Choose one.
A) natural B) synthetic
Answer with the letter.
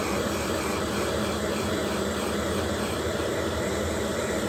B